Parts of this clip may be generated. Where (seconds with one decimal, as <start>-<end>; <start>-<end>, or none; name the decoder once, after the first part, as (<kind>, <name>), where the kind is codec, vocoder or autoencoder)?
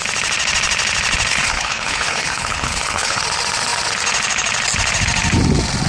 1.3-3.2 (codec, HILCodec)